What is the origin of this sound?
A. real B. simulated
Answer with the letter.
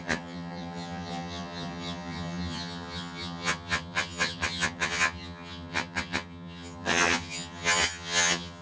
B